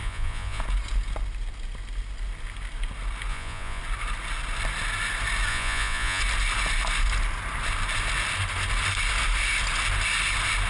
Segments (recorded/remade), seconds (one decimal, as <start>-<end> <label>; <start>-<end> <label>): 0.0-0.6 remade; 0.6-3.3 recorded; 3.3-3.8 remade; 3.8-5.5 recorded; 5.5-6.2 remade; 6.2-10.7 recorded